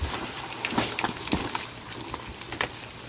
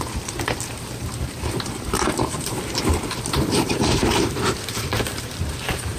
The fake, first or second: second